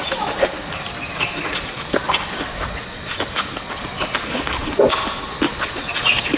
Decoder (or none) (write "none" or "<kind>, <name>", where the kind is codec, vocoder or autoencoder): none